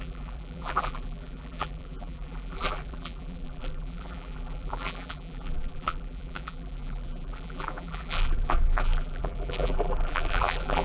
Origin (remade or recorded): remade